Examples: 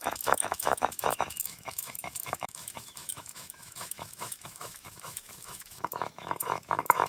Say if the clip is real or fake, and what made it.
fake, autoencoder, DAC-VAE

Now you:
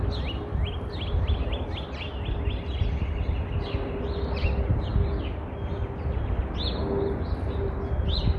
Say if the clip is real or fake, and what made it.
real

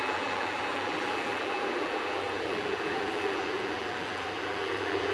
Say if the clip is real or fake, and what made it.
fake, vocoder, BigVGAN v2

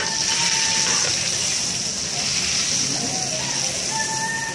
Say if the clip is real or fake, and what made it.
real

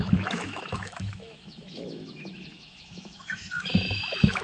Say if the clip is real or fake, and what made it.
fake, autoencoder, DAC-VAE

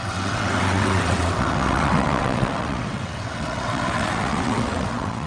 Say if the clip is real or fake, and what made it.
fake, vocoder, WaveNeXt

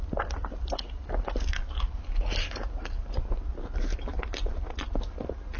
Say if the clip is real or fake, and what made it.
real